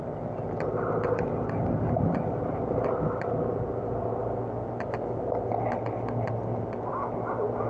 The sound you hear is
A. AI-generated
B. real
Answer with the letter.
B